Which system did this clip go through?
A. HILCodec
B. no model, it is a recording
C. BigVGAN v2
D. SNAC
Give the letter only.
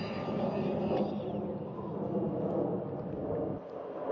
B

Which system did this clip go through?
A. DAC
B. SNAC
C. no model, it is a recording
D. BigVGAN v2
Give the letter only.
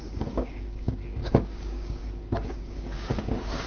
A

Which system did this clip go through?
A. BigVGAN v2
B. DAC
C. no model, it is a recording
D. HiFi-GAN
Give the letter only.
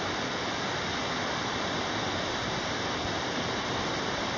C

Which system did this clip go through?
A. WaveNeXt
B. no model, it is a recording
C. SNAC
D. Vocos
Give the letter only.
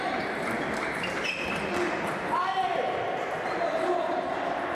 B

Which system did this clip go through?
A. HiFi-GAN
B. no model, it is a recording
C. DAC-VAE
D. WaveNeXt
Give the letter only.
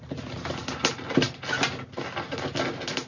B